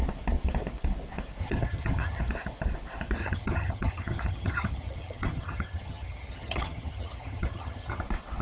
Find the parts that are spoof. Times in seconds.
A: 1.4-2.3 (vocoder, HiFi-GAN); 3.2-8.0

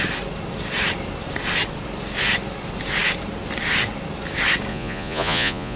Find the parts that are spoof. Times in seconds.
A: 4.7-5.8 (vocoder, Vocos)

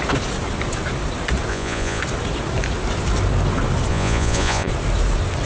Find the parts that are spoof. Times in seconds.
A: 1.5-2.0 (vocoder, Vocos); 3.9-4.7

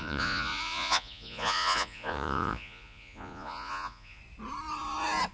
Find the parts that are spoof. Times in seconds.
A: 0.0-4.2 (vocoder, Vocos)

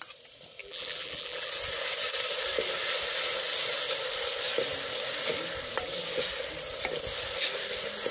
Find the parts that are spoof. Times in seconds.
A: 0.6-1.5 (vocoder, BigVGAN v2)

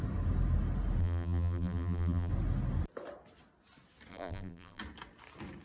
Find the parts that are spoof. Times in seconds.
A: 1.0-2.3 (vocoder, BigVGAN v2); 4.1-4.8

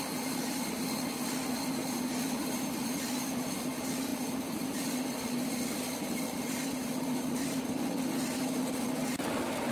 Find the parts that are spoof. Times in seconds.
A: 4.1-7.6 (vocoder, BigVGAN v2)

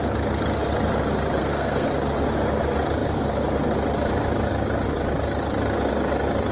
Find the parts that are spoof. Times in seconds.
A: 1.4-1.9 (codec, SNAC)